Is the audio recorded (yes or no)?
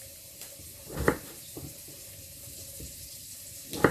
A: no